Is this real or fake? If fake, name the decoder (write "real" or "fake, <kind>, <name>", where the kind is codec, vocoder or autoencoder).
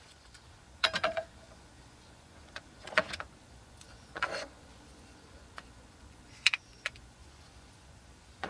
fake, vocoder, Vocos